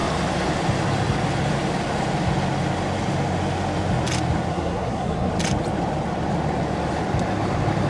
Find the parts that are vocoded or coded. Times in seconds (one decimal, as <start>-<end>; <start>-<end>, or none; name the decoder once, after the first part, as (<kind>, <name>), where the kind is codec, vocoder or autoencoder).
4.5-5.3 (codec, SNAC)